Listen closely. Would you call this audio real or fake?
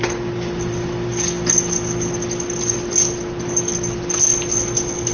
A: real